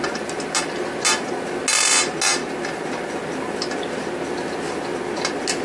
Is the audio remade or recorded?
recorded